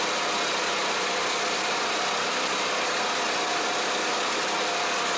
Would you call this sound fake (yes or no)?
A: no